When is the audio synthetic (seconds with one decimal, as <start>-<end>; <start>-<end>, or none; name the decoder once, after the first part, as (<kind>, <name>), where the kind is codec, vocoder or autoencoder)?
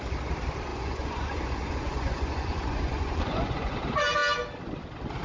0.7-3.8 (vocoder, Vocos)